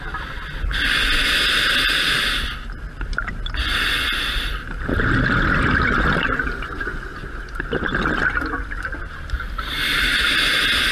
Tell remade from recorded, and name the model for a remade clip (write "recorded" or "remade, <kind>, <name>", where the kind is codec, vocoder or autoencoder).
recorded